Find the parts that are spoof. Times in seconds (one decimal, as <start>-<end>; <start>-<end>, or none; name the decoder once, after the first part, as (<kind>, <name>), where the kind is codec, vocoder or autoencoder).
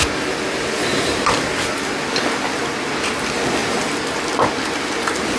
none